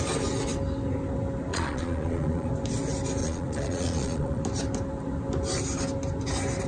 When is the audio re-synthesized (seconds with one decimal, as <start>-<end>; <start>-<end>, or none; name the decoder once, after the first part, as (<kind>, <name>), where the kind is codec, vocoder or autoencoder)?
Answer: 1.5-2.5 (vocoder, Vocos); 3.2-4.4